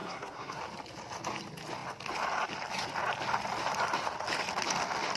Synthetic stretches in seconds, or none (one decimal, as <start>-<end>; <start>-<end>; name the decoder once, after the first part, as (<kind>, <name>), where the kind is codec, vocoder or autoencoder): 0.0-0.6 (codec, SNAC)